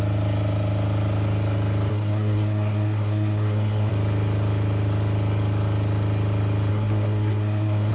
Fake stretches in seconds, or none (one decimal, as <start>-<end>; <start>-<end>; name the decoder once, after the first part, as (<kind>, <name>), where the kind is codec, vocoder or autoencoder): 1.9-3.9 (codec, SNAC); 6.7-7.9